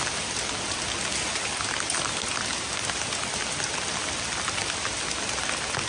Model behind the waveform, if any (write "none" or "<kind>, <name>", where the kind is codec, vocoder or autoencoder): none